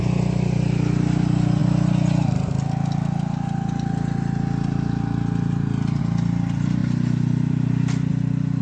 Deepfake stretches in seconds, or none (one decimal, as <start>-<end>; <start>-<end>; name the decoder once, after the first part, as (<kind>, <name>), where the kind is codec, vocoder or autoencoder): none